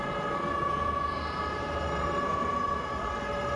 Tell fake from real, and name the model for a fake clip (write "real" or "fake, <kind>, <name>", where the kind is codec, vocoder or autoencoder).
real